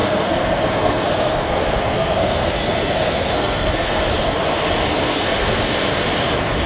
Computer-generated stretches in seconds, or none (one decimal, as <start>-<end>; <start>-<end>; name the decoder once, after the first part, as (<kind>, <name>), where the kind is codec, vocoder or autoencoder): 0.0-4.0 (codec, SNAC); 4.9-5.6